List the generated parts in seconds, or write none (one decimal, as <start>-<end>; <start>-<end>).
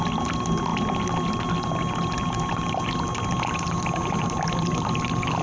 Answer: none